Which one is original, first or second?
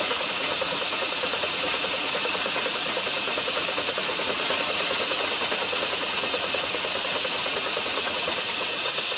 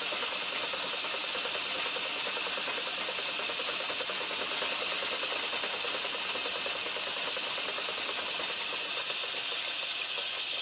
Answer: second